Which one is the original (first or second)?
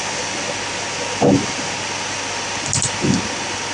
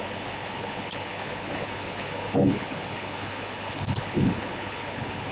first